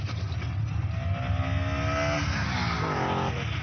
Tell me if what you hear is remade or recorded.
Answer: recorded